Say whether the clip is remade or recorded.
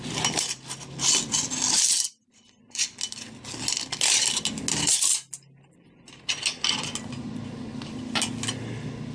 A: recorded